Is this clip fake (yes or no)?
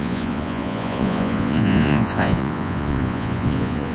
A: yes